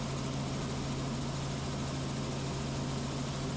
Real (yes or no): yes